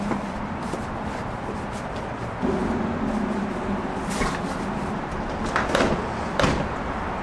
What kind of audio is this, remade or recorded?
recorded